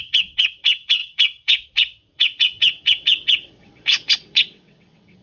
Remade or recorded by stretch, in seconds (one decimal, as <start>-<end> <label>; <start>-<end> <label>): 0.0-5.2 remade

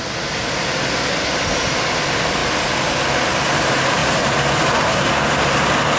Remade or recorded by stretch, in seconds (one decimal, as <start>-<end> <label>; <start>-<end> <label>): 0.0-4.0 recorded; 4.0-4.6 remade; 4.6-6.0 recorded

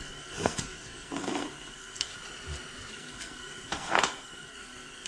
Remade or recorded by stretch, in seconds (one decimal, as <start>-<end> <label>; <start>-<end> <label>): 0.0-2.1 remade; 2.1-2.9 recorded; 2.9-5.1 remade

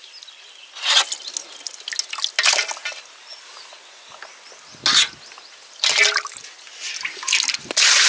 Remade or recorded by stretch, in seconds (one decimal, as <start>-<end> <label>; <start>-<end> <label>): 0.0-8.1 recorded

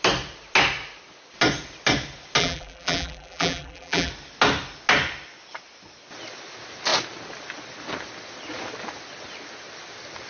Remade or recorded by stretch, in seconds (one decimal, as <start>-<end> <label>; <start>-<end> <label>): 0.0-2.4 recorded; 2.4-4.1 remade; 4.1-10.3 recorded

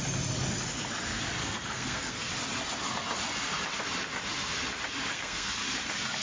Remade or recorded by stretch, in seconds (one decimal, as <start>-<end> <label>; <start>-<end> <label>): 0.0-1.4 recorded; 1.4-2.3 remade; 2.3-5.1 recorded; 5.1-5.6 remade; 5.6-6.2 recorded